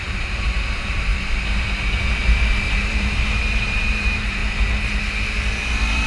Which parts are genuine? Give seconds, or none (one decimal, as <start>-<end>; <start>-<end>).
1.1-2.1; 4.4-6.1